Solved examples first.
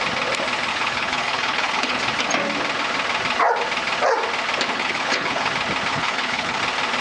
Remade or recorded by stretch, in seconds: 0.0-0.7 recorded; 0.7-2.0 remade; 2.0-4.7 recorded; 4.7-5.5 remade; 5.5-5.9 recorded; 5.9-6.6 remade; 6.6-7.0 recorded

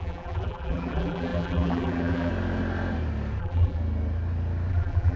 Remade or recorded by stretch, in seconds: 0.0-2.3 remade; 2.3-3.4 recorded; 3.4-3.8 remade; 3.8-4.7 recorded; 4.7-5.2 remade

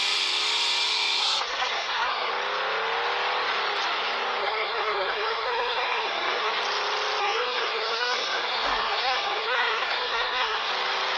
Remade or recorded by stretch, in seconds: 0.0-1.2 recorded; 1.2-2.3 remade; 2.3-4.4 recorded; 4.4-6.5 remade; 6.5-7.2 recorded; 7.2-10.7 remade; 10.7-11.2 recorded

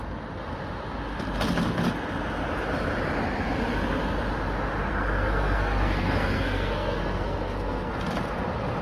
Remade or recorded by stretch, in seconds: 0.0-4.9 recorded; 4.9-7.9 remade; 7.9-8.8 recorded

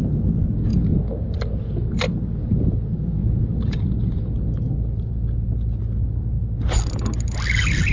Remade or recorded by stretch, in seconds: 0.0-7.9 recorded